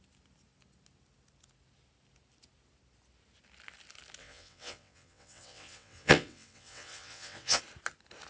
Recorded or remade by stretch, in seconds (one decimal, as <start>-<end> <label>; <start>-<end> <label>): 0.0-4.2 recorded; 4.2-7.6 remade; 7.6-8.3 recorded